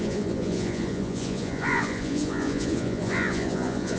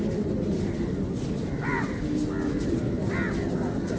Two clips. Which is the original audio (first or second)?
second